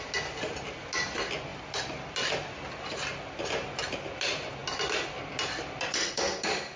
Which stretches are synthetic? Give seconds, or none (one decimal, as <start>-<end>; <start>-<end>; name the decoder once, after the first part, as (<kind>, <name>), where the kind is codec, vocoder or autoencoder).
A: none